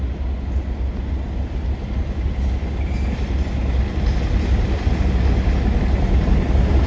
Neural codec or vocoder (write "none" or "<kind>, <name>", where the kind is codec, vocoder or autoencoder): none